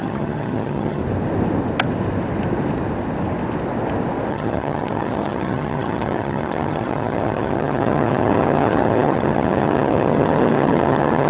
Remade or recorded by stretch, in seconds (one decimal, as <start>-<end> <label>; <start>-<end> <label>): 0.0-1.0 remade; 1.0-4.3 recorded; 4.3-11.3 remade